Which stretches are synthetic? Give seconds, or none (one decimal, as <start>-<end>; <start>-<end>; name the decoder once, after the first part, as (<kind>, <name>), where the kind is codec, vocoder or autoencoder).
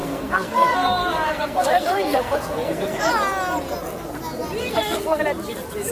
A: 0.0-3.1 (codec, SNAC); 4.6-5.2